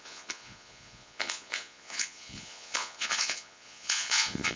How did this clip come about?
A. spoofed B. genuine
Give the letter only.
A